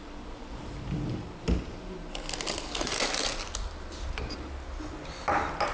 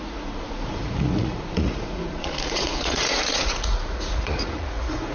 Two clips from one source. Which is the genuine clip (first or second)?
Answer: first